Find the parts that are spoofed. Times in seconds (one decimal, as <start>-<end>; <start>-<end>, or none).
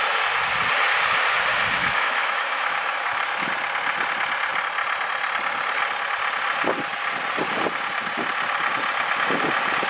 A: 1.8-3.5